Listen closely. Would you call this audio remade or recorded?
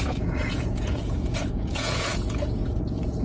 remade